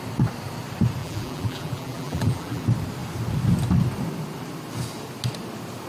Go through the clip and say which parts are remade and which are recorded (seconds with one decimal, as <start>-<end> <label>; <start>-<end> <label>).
0.0-1.0 recorded; 1.0-2.6 remade; 2.6-5.9 recorded

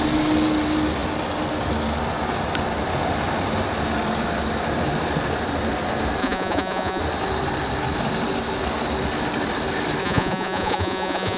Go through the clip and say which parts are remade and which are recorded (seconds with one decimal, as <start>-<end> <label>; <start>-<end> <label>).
0.0-6.2 recorded; 6.2-7.0 remade; 7.0-10.0 recorded; 10.0-11.4 remade

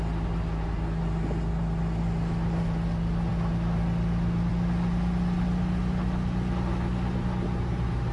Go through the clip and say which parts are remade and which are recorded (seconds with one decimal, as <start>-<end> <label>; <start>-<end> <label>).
0.0-8.1 recorded

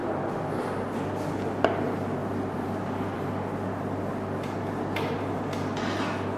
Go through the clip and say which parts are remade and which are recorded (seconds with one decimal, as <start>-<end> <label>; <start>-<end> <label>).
0.0-2.2 recorded; 2.2-3.2 remade; 3.2-6.4 recorded

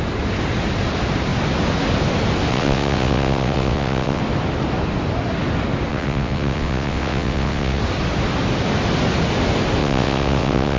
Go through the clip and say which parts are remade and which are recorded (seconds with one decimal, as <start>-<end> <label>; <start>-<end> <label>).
0.0-2.5 recorded; 2.5-4.2 remade; 4.2-5.9 recorded; 5.9-7.8 remade; 7.8-9.8 recorded; 9.8-10.8 remade

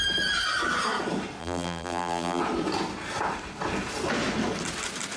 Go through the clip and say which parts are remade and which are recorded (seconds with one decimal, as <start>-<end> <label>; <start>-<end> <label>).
0.0-1.4 recorded; 1.4-2.4 remade; 2.4-5.2 recorded

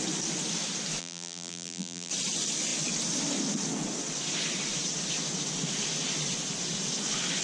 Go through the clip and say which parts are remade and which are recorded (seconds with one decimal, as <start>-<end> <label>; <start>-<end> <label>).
0.0-1.0 recorded; 1.0-2.1 remade; 2.1-7.4 recorded